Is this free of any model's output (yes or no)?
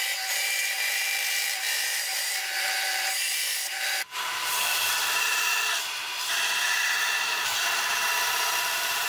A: no